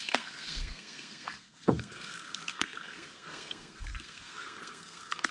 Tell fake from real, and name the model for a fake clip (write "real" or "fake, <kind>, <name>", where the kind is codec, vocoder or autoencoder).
fake, codec, SNAC